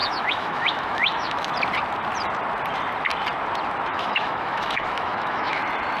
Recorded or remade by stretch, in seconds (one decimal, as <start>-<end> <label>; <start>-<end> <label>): 0.0-1.5 remade; 1.5-3.9 recorded; 3.9-5.6 remade; 5.6-6.0 recorded